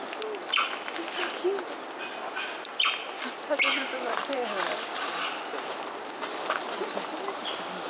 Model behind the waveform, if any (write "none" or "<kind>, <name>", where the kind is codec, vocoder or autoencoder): none